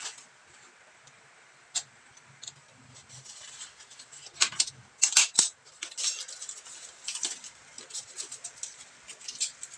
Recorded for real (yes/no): yes